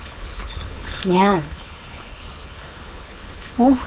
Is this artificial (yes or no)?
yes